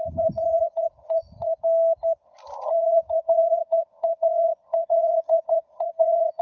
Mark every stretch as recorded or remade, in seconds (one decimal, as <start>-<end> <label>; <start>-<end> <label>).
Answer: 0.0-1.5 remade; 1.5-2.7 recorded; 2.7-6.4 remade